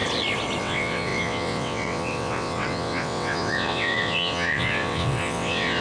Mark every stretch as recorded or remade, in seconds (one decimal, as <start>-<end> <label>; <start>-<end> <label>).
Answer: 0.0-0.6 recorded; 0.6-5.8 remade